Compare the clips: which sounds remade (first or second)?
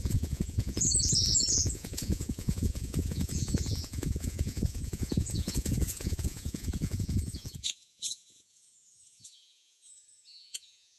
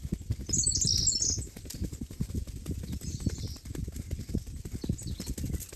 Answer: first